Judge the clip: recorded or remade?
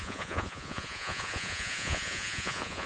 remade